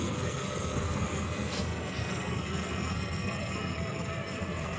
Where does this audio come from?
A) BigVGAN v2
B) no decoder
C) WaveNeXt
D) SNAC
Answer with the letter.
D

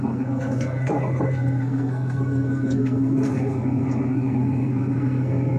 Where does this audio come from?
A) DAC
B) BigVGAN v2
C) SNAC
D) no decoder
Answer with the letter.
C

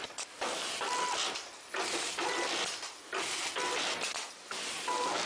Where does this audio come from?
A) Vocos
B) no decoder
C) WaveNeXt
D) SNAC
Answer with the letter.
B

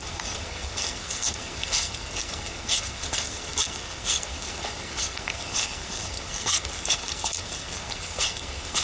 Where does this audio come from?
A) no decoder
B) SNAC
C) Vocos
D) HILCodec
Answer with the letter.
B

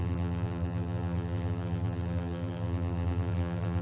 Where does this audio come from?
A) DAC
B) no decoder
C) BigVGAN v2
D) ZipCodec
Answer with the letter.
C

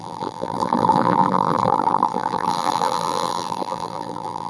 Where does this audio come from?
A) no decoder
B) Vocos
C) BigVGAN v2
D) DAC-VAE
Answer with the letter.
C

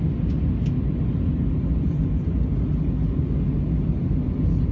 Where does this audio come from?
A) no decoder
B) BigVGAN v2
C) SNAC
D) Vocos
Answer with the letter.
A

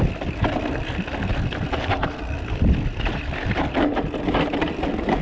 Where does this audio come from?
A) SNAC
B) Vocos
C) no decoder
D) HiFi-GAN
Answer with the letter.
C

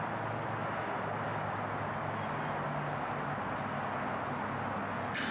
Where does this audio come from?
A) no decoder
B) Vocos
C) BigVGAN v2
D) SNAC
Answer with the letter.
A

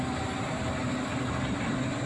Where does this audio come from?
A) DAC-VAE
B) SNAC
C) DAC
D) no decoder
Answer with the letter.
D